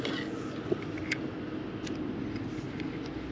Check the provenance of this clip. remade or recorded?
recorded